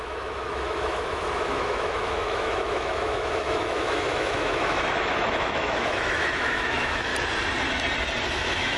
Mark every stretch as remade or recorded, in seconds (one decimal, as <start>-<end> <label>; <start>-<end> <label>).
0.0-7.1 remade; 7.1-8.3 recorded; 8.3-8.8 remade